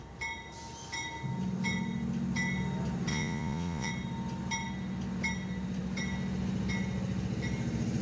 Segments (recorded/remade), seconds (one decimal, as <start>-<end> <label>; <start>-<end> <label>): 0.0-3.1 recorded; 3.1-3.9 remade; 3.9-8.0 recorded